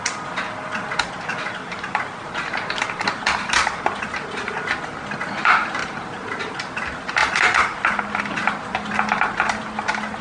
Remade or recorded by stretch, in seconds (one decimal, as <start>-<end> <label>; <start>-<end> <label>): 0.0-1.3 recorded; 1.3-4.0 remade; 4.0-5.8 recorded; 5.8-6.7 remade; 6.7-10.2 recorded